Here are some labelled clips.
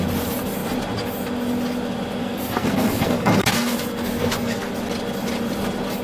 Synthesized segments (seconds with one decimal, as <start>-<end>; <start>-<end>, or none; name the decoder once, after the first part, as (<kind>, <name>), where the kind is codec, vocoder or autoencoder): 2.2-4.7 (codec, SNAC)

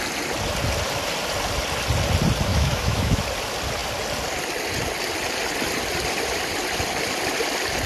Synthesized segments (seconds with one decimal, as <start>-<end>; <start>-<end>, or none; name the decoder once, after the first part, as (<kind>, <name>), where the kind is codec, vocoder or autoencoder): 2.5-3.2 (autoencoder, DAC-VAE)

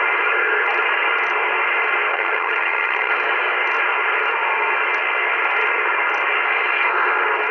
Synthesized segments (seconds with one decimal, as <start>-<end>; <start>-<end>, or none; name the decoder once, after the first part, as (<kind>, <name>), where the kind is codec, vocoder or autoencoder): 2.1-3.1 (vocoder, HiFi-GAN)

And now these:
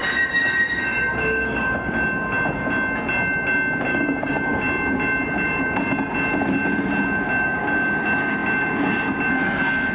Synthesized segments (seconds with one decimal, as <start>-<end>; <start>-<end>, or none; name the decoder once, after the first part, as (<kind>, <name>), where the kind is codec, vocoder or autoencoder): 0.0-1.9 (codec, DAC); 3.9-4.6